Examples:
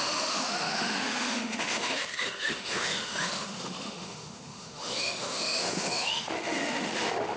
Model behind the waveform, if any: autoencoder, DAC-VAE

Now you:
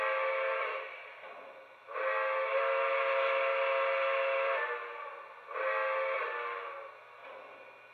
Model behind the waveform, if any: none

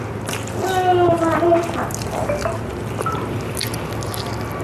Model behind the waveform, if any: none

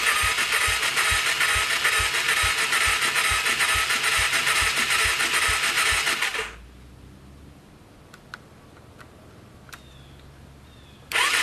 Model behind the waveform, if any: none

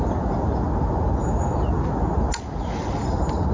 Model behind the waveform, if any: none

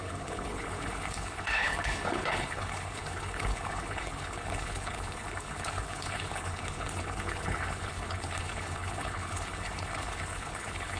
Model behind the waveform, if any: codec, HILCodec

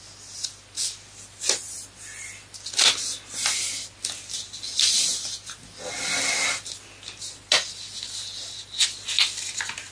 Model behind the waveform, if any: none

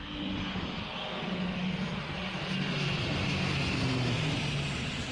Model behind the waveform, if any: none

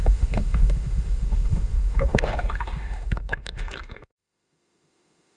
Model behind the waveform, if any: autoencoder, DAC-VAE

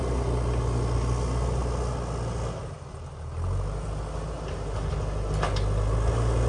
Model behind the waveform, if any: none